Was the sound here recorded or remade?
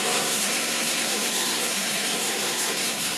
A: remade